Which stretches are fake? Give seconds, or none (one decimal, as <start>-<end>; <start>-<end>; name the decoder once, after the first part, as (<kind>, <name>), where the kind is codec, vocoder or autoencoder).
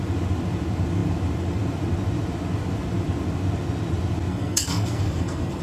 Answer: 4.3-5.6 (codec, SNAC)